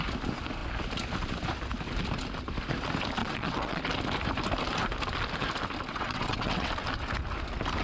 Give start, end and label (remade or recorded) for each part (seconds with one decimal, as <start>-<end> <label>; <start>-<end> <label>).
0.0-3.2 recorded; 3.2-3.8 remade; 3.8-5.9 recorded; 5.9-6.7 remade; 6.7-7.8 recorded